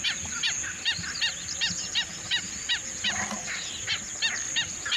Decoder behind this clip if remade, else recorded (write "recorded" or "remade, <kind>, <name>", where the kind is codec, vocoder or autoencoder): recorded